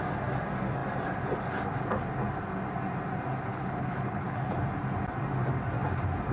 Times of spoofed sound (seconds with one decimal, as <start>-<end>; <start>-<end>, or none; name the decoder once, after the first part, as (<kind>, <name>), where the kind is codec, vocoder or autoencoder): 3.5-4.5 (codec, HILCodec)